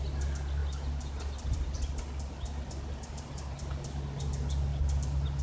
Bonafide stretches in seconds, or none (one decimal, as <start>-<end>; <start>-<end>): 0.0-0.6; 3.5-5.4